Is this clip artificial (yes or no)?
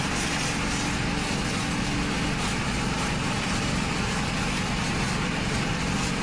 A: no